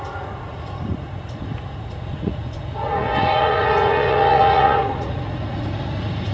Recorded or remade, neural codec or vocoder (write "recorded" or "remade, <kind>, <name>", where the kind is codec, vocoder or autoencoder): remade, vocoder, Vocos